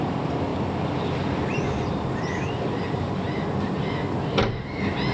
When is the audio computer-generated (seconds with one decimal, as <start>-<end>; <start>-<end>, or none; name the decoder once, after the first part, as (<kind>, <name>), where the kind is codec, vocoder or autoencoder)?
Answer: none